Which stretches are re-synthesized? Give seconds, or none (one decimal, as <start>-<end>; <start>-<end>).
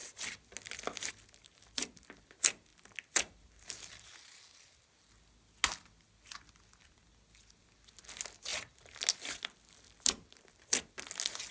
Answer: none